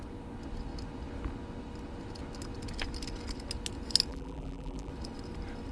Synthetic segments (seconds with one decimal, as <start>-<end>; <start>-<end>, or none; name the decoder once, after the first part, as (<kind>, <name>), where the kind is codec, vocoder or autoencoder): 4.1-4.9 (vocoder, BigVGAN v2)